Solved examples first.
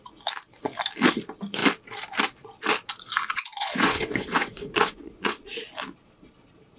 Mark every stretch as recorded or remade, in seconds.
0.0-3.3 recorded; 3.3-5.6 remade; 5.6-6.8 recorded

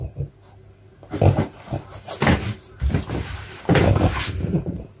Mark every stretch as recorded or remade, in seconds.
0.0-5.0 recorded

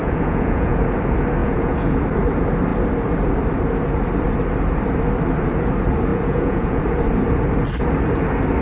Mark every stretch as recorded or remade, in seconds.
0.0-0.8 remade; 0.8-1.4 recorded; 1.4-2.0 remade; 2.0-6.1 recorded; 6.1-6.8 remade; 6.8-8.6 recorded

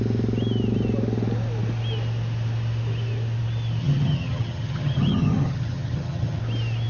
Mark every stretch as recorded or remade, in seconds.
0.0-3.8 recorded; 3.8-6.4 remade; 6.4-6.9 recorded